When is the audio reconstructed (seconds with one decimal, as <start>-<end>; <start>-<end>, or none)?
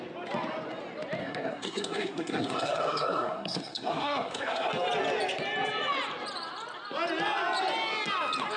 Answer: 1.2-4.7